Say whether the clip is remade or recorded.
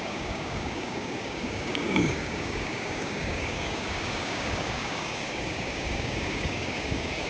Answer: remade